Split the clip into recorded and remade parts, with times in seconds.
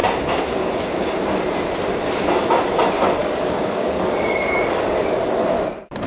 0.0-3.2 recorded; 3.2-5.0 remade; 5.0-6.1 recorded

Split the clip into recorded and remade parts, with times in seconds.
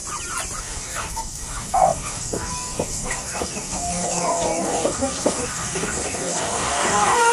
0.0-0.6 recorded; 0.6-7.3 remade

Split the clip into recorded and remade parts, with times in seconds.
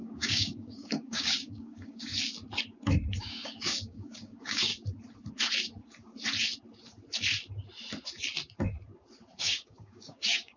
0.0-2.1 remade; 2.1-3.2 recorded; 3.2-4.7 remade; 4.7-9.4 recorded; 9.4-10.6 remade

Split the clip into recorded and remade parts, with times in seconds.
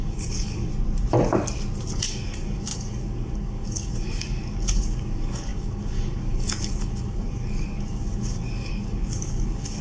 0.0-0.7 remade; 0.7-2.0 recorded; 2.0-9.8 remade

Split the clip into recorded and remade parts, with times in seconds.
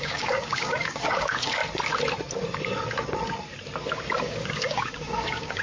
0.0-1.6 remade; 1.6-4.2 recorded; 4.2-5.6 remade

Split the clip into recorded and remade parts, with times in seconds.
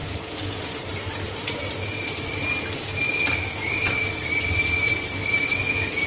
0.0-6.1 recorded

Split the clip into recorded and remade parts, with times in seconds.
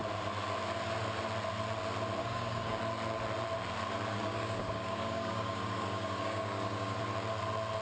0.0-2.2 recorded; 2.2-2.8 remade; 2.8-4.1 recorded; 4.1-7.0 remade; 7.0-7.8 recorded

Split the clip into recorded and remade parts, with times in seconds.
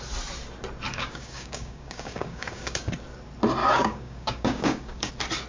0.0-0.9 recorded; 0.9-2.9 remade; 2.9-3.6 recorded; 3.6-5.1 remade; 5.1-5.5 recorded